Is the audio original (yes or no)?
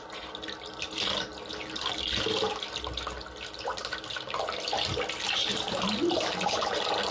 yes